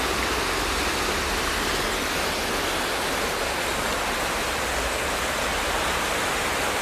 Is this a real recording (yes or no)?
yes